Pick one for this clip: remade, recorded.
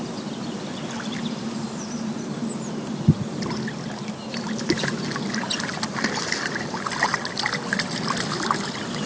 recorded